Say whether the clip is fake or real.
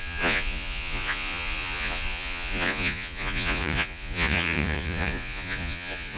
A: fake